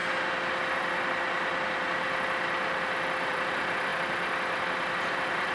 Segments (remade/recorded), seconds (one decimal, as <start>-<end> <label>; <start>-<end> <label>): 0.0-3.3 recorded; 3.3-3.9 remade; 3.9-4.9 recorded; 4.9-5.5 remade